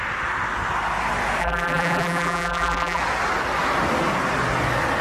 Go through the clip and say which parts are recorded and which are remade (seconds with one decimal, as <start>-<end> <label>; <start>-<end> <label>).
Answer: 0.0-1.4 recorded; 1.4-3.0 remade; 3.0-5.0 recorded